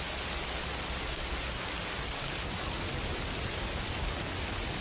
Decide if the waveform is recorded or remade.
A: recorded